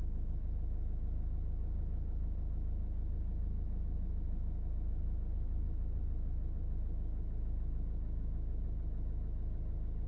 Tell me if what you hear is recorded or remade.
recorded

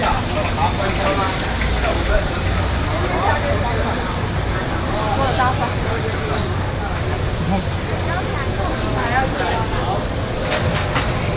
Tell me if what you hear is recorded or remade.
recorded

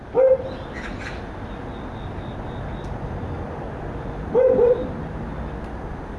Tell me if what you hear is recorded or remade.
recorded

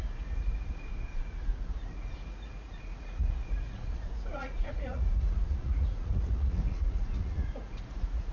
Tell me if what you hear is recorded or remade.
remade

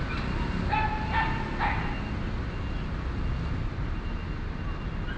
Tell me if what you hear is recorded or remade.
recorded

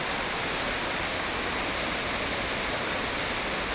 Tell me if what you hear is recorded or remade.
recorded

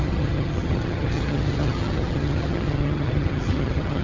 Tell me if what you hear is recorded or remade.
remade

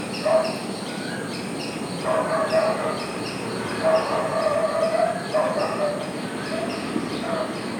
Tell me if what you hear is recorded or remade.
remade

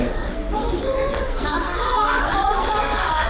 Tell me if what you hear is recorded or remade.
remade